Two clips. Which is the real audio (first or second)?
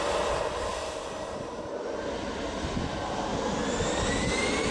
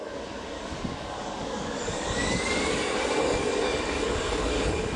first